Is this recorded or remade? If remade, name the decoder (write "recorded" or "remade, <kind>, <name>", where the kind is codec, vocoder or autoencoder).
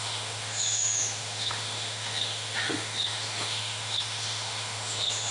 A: remade, autoencoder, DAC-VAE